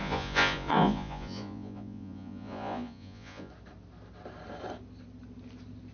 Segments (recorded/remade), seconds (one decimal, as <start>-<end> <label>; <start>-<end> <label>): 0.0-3.5 remade; 3.5-5.9 recorded